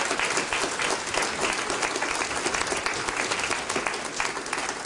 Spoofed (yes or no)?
no